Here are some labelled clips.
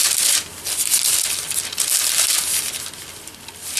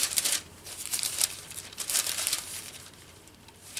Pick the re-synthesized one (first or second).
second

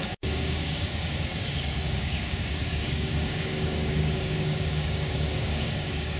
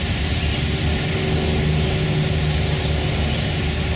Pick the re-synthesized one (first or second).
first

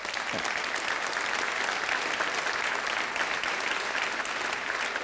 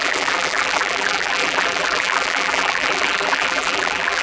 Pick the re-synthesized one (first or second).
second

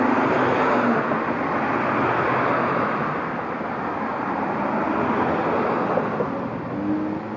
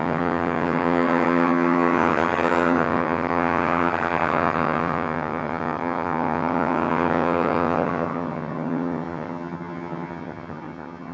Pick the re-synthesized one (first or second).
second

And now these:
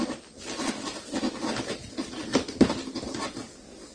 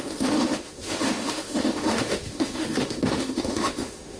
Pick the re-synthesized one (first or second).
second